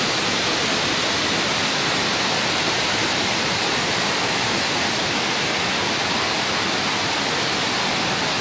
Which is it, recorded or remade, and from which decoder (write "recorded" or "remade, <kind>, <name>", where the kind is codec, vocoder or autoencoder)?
recorded